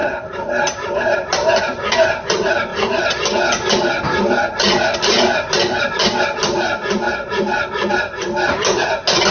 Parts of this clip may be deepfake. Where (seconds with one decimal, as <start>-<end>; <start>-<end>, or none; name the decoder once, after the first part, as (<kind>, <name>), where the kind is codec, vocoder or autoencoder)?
0.0-1.9 (vocoder, BigVGAN v2)